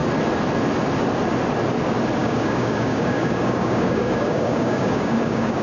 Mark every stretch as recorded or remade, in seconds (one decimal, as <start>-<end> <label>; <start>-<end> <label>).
0.0-2.2 recorded; 2.2-5.6 remade

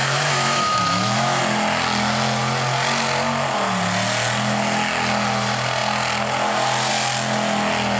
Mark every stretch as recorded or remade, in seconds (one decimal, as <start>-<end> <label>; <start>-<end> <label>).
0.0-1.4 remade; 1.4-8.0 recorded

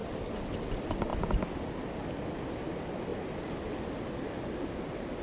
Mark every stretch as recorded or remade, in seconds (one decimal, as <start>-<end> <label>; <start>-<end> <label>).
0.0-5.2 recorded

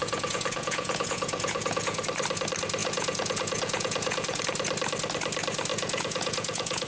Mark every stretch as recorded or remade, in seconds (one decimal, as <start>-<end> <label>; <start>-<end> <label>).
0.0-2.0 remade; 2.0-2.8 recorded; 2.8-4.4 remade; 4.4-5.7 recorded; 5.7-6.9 remade

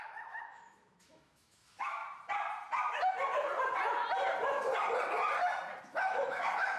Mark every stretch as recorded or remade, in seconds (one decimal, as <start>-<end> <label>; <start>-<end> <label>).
0.0-2.0 remade; 2.0-5.8 recorded; 5.8-6.8 remade

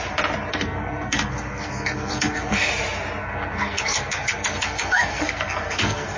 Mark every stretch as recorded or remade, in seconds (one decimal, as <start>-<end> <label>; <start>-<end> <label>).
0.0-0.5 recorded; 0.5-2.7 remade; 2.7-3.2 recorded; 3.2-6.2 remade

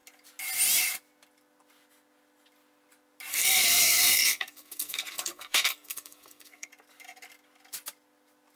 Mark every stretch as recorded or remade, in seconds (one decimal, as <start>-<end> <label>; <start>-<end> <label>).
0.0-3.3 recorded; 3.3-6.7 remade; 6.7-8.6 recorded

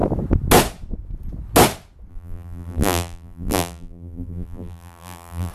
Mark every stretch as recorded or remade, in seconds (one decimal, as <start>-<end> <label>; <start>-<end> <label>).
0.0-2.1 recorded; 2.1-5.5 remade